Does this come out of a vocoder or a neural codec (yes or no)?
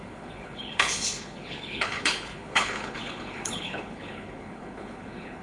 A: yes